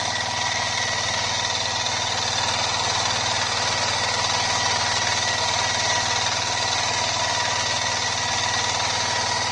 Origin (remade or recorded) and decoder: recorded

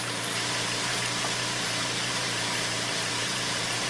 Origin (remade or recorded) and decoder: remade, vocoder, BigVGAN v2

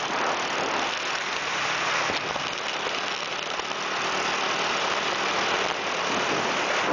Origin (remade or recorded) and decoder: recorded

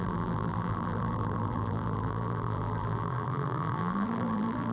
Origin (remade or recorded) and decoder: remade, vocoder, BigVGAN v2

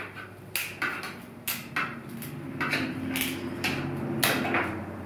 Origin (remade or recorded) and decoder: recorded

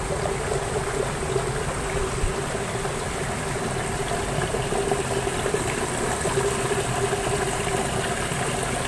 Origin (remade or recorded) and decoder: recorded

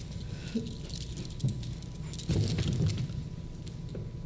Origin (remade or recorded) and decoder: recorded